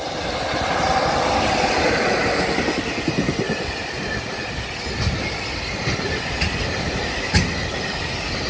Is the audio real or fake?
real